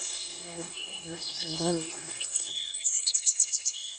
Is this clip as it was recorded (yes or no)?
no